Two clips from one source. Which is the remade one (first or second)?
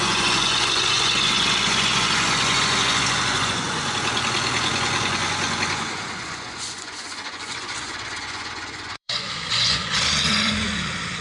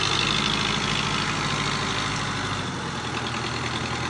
first